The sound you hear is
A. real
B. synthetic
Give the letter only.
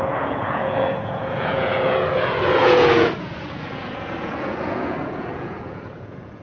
B